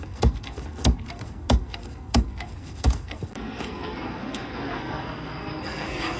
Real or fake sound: fake